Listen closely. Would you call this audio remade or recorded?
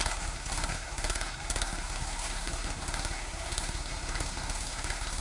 remade